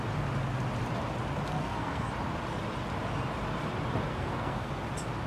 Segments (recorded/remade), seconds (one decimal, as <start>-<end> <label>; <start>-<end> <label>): 0.0-1.6 recorded; 1.6-2.1 remade; 2.1-4.1 recorded; 4.1-4.7 remade; 4.7-5.3 recorded